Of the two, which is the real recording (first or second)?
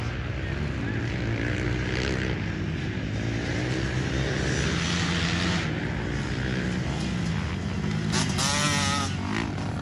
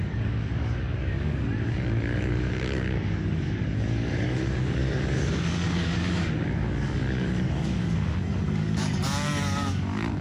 first